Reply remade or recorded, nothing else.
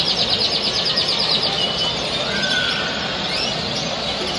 recorded